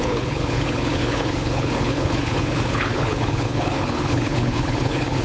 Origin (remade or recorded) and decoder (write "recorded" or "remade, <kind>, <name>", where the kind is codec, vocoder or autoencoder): remade, codec, HILCodec